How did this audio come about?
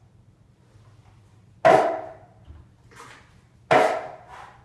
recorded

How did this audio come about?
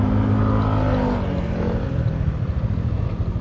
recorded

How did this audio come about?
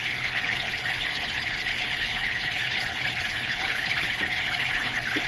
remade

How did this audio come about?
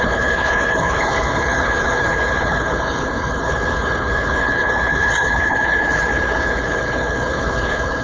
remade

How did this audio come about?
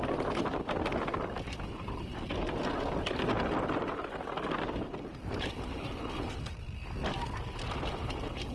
recorded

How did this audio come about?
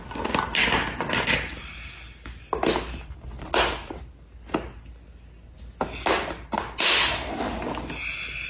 recorded